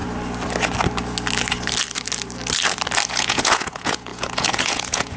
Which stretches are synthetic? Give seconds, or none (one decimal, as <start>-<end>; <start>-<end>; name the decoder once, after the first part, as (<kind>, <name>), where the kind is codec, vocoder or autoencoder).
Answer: 3.1-5.2 (vocoder, Vocos)